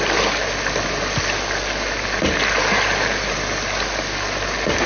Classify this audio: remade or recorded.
recorded